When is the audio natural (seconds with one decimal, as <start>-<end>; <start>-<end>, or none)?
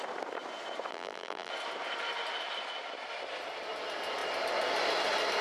0.0-0.9; 1.5-5.4